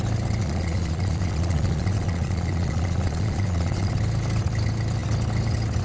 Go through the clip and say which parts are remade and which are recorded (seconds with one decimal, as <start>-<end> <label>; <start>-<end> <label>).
0.0-0.4 recorded; 0.4-3.9 remade; 3.9-5.8 recorded